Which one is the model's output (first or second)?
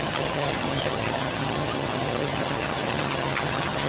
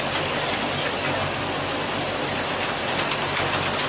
first